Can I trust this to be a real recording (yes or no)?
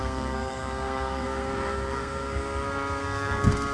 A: no